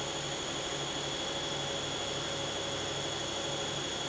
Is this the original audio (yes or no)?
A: yes